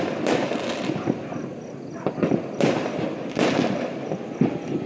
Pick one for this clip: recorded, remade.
recorded